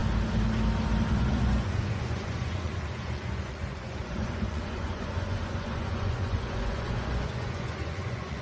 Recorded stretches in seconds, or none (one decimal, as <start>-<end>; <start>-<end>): 0.0-1.1